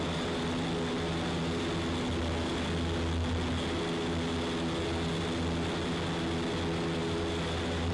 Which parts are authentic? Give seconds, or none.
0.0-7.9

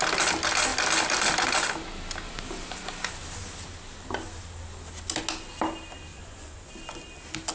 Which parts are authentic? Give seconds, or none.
0.0-6.1; 6.7-7.5

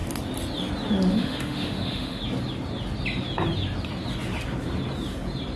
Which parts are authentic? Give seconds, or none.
0.0-1.1; 2.2-5.6

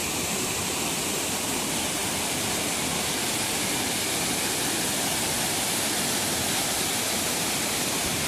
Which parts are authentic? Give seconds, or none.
2.0-7.0